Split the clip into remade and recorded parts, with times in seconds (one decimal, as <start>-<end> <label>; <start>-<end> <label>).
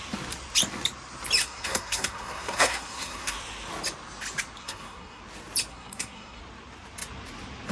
0.0-1.4 recorded; 1.4-3.4 remade; 3.4-4.6 recorded; 4.6-5.2 remade; 5.2-5.7 recorded; 5.7-6.4 remade; 6.4-7.7 recorded